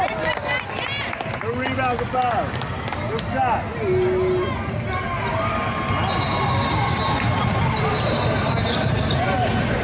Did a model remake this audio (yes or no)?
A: no